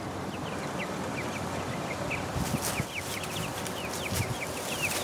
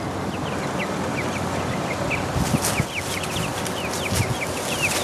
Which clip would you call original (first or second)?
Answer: second